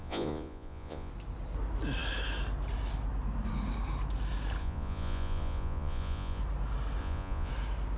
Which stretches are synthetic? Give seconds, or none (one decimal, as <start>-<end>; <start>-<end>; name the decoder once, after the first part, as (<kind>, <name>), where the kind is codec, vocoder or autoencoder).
0.0-1.1 (vocoder, Vocos); 4.6-6.4; 7.0-7.5